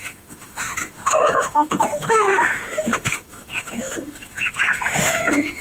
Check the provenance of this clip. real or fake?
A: fake